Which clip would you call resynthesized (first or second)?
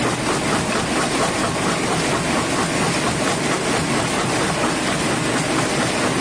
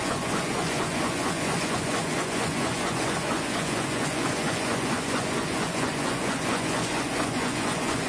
second